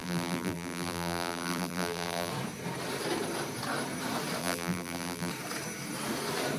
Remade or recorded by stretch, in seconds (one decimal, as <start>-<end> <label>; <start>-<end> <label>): 0.0-2.3 remade; 2.3-4.4 recorded; 4.4-5.3 remade; 5.3-6.6 recorded